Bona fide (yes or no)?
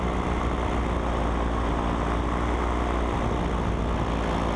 yes